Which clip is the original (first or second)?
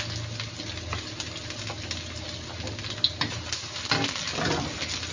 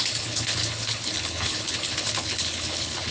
first